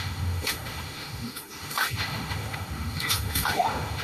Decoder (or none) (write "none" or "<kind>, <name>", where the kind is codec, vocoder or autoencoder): autoencoder, DAC-VAE